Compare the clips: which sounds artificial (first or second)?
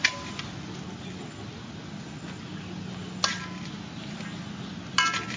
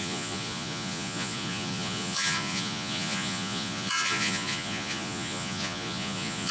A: second